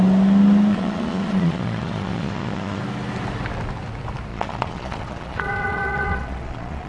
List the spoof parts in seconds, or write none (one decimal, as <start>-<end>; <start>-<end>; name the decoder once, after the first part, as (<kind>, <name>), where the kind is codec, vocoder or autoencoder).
0.7-2.8 (vocoder, Vocos); 4.3-6.9